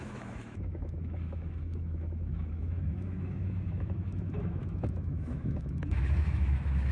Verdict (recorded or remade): remade